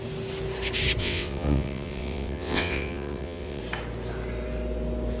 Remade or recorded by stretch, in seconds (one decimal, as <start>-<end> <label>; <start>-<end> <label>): 0.0-1.0 recorded; 1.0-3.6 remade; 3.6-5.2 recorded